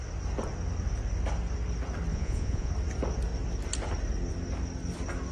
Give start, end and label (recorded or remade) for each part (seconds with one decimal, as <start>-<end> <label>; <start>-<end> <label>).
0.0-2.1 recorded; 2.1-2.7 remade; 2.7-5.3 recorded